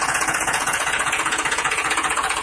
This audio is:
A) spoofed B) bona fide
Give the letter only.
A